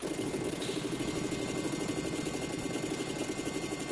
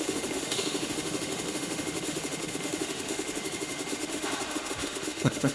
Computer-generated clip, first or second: second